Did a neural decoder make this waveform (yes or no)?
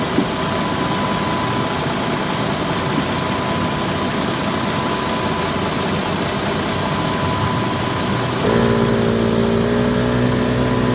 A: no